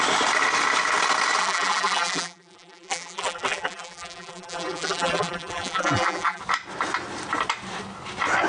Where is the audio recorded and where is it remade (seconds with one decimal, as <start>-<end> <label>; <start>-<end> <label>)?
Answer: 0.0-1.4 recorded; 1.4-6.4 remade; 6.4-8.5 recorded